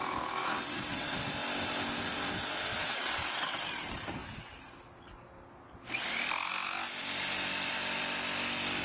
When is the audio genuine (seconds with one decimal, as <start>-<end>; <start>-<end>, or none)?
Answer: 0.0-0.4; 1.2-2.8; 3.4-8.8